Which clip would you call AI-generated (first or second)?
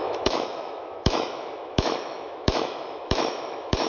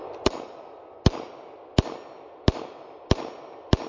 first